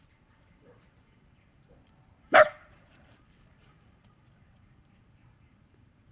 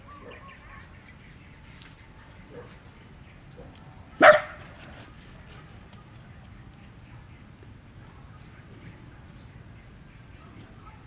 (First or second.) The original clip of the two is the second